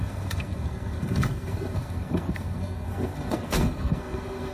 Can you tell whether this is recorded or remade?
remade